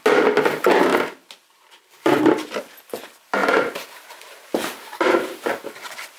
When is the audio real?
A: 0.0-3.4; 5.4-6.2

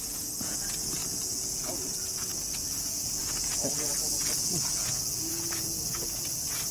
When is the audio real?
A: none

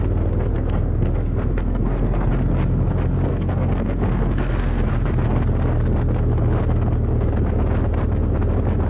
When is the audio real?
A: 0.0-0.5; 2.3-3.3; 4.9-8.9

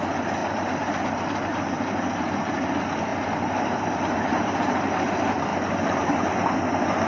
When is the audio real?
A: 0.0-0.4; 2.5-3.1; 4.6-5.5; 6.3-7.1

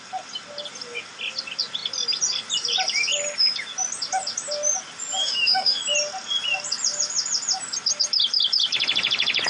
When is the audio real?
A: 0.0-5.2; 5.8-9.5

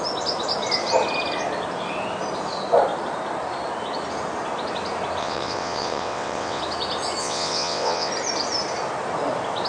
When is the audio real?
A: 0.0-5.2; 6.6-7.2; 8.1-9.7